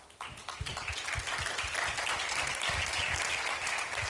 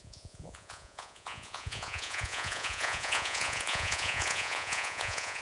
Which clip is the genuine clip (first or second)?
first